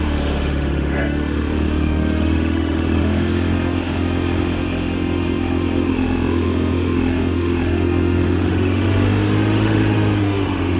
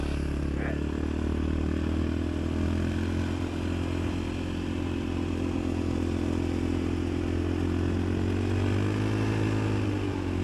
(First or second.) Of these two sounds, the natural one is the second